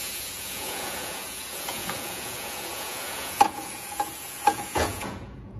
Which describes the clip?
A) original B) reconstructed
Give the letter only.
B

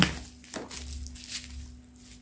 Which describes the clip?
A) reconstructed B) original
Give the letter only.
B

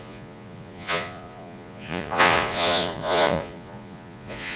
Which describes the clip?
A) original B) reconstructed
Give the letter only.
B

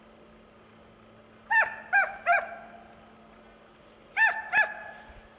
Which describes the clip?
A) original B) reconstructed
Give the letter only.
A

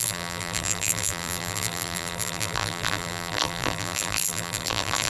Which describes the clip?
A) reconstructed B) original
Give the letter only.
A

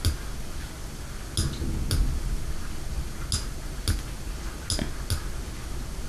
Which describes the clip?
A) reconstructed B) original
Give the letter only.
B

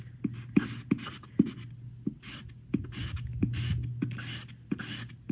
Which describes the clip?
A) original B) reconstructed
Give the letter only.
A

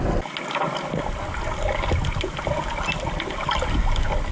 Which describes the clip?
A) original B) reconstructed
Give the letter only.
A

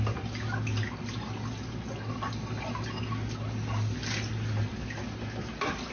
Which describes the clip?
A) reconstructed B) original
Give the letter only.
B